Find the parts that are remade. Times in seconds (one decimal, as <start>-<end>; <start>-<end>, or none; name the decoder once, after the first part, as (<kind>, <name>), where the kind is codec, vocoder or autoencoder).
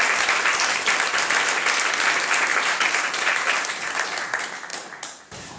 2.5-3.7 (vocoder, BigVGAN v2); 4.7-5.6